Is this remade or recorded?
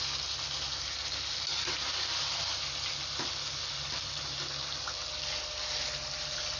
recorded